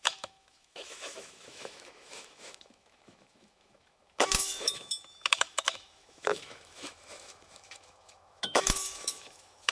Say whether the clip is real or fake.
fake